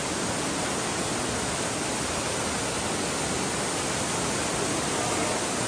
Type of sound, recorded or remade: recorded